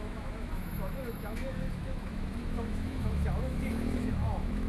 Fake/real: fake